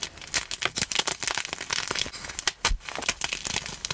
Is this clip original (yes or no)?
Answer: yes